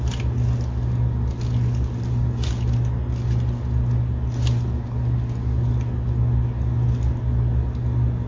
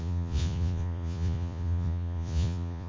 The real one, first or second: first